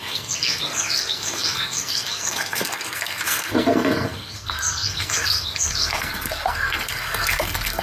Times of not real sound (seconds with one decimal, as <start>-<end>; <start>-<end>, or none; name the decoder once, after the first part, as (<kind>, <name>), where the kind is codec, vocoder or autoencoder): 0.0-7.8 (codec, SNAC)